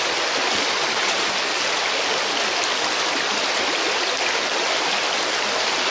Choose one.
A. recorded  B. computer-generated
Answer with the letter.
A